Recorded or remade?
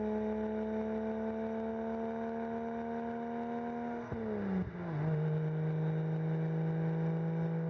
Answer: recorded